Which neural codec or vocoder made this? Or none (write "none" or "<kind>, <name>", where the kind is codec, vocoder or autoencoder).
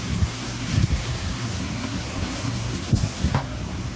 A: codec, SNAC